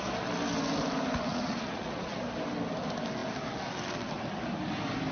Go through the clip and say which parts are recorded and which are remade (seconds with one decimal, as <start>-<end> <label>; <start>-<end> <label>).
0.0-1.3 recorded; 1.3-2.2 remade; 2.2-5.1 recorded